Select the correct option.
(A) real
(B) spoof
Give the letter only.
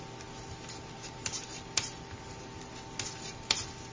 A